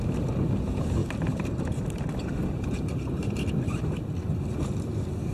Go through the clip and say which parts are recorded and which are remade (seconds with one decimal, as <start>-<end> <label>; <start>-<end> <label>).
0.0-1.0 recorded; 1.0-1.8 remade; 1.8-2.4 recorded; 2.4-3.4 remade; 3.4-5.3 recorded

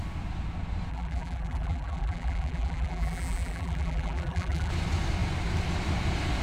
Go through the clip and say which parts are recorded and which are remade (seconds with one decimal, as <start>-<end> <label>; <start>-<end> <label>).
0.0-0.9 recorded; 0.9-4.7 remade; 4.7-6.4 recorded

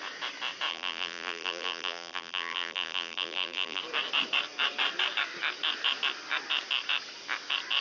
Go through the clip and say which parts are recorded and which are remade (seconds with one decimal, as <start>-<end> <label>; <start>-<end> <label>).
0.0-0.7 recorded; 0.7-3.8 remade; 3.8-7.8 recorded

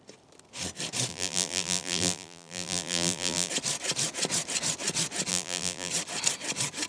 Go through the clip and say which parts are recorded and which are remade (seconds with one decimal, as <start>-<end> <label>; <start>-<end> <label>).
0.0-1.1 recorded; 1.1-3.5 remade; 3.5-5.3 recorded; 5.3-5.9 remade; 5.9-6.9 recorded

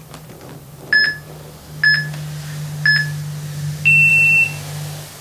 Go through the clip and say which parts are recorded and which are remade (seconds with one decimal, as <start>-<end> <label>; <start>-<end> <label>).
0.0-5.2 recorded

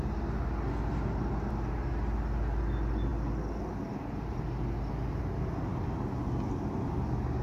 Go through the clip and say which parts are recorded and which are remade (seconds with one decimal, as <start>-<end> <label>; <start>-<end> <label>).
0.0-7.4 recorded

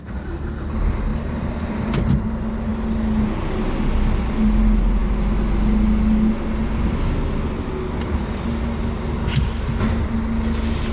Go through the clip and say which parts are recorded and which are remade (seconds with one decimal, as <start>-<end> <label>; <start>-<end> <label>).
0.0-10.9 recorded

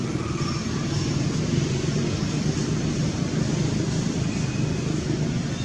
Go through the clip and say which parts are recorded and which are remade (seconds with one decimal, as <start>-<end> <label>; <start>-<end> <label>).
0.0-3.0 recorded; 3.0-4.4 remade; 4.4-5.6 recorded